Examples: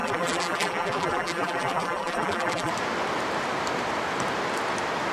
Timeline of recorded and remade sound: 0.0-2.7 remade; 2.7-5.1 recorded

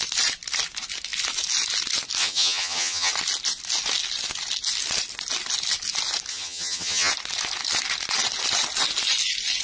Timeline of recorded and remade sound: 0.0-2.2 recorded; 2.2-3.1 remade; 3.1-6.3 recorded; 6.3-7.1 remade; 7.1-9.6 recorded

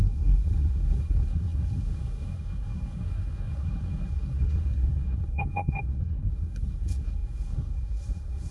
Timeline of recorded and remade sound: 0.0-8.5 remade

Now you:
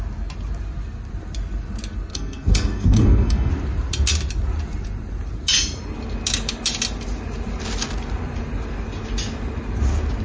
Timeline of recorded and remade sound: 0.0-2.1 recorded; 2.1-3.5 remade; 3.5-10.2 recorded

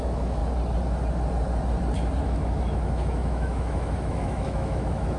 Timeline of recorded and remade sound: 0.0-0.4 remade; 0.4-2.2 recorded; 2.2-5.2 remade